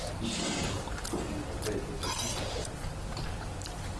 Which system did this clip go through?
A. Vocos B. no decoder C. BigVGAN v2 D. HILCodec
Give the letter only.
B